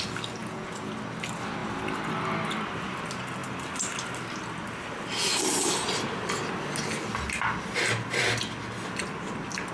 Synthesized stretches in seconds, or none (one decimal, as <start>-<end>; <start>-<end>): 0.4-0.9